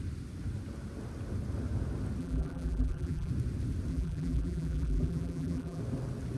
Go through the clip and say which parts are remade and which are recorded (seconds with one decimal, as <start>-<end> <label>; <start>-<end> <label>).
0.0-2.2 recorded; 2.2-3.3 remade; 3.3-3.9 recorded; 3.9-5.8 remade; 5.8-6.4 recorded